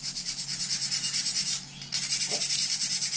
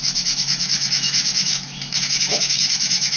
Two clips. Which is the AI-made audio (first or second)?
second